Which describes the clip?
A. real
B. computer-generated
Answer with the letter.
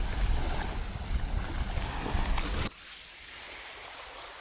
A